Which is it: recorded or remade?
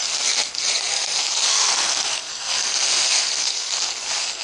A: remade